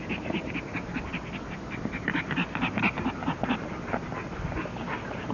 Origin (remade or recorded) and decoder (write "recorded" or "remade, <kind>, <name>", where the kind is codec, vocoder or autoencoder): recorded